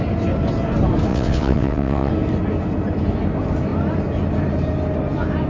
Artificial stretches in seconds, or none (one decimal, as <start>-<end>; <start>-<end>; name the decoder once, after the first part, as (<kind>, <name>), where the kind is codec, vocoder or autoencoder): 1.1-2.1 (vocoder, WaveNeXt)